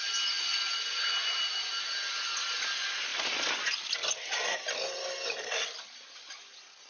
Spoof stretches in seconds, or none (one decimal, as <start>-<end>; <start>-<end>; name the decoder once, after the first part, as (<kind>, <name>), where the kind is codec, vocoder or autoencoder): none